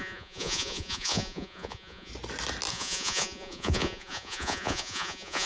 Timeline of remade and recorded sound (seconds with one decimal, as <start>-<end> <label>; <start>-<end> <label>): 0.0-2.1 remade; 2.1-2.7 recorded; 2.7-5.5 remade